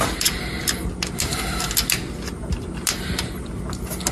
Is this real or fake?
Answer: real